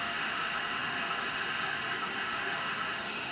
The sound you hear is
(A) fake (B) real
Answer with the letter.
A